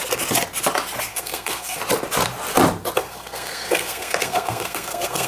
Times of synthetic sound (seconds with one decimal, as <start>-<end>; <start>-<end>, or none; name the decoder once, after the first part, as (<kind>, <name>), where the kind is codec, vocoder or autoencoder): 1.1-1.8 (codec, SNAC); 3.0-5.3